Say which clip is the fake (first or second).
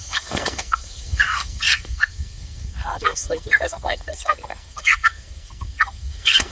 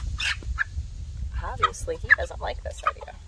first